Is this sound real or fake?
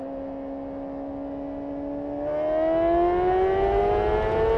real